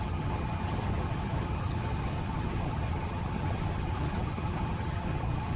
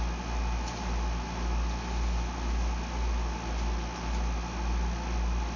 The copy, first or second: first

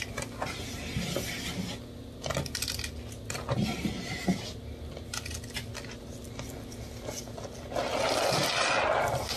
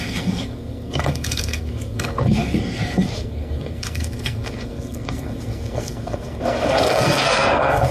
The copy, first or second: second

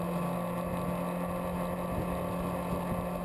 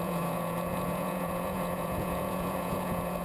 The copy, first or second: second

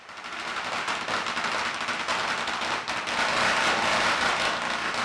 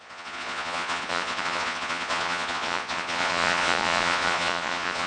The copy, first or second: second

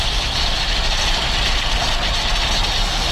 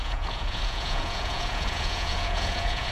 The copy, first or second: second